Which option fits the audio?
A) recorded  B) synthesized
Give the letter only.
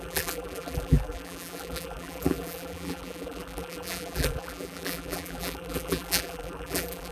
B